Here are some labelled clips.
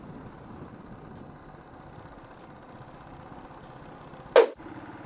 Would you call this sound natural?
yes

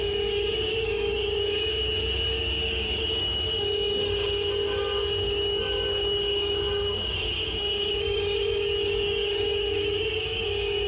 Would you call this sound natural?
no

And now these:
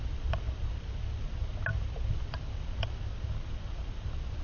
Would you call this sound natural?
yes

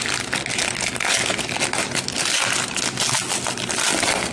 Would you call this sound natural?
yes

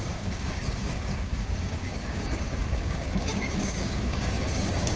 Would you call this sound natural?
no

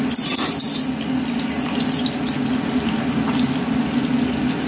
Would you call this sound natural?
yes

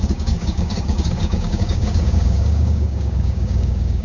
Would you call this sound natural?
no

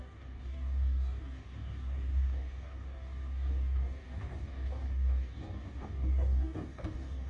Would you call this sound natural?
no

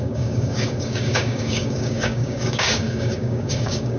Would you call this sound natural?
no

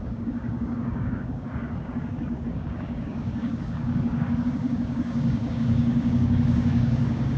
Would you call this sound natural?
no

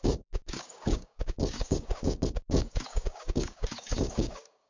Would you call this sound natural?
no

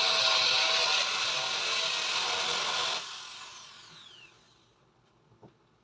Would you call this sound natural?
yes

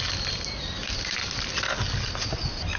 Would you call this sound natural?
yes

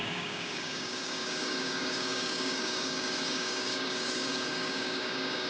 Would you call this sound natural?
no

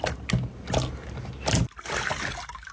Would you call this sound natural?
yes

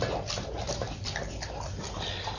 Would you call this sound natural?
yes